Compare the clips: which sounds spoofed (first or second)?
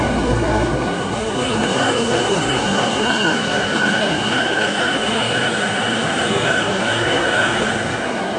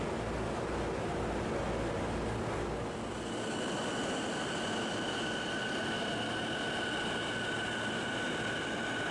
first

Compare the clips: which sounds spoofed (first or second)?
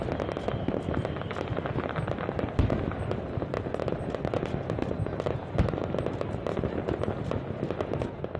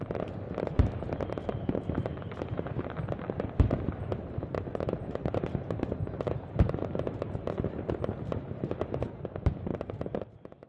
second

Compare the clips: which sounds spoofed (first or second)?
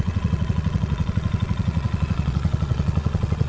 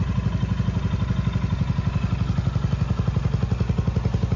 first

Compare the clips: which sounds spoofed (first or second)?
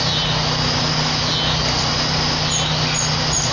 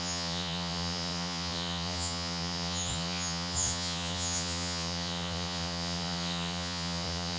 second